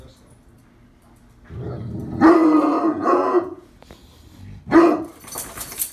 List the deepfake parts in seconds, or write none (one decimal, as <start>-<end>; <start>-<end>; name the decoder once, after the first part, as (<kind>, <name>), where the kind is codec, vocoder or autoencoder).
2.9-3.7 (vocoder, Vocos)